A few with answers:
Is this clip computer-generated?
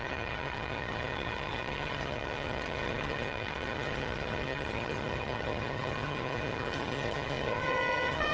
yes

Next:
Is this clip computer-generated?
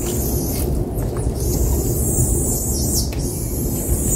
no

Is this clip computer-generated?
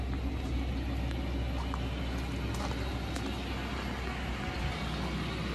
no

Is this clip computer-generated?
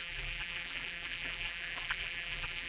yes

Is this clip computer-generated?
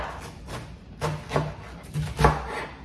no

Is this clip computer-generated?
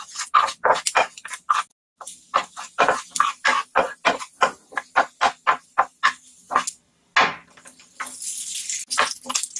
no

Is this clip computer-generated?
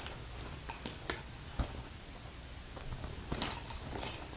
no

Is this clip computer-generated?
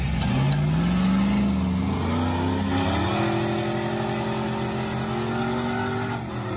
no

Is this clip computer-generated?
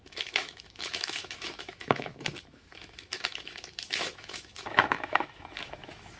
yes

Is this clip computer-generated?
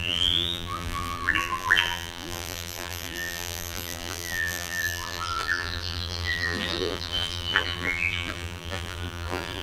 yes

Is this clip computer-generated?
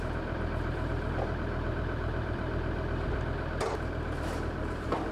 yes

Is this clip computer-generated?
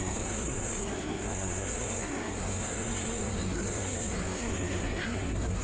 yes